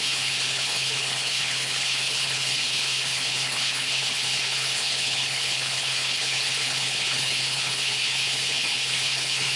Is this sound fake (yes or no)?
yes